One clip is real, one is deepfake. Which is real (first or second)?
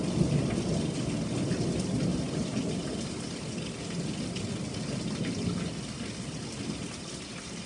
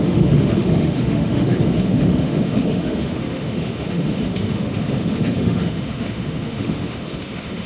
first